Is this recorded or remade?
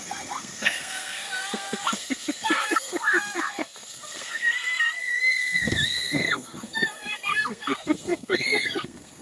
remade